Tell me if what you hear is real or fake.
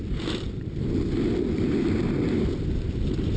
real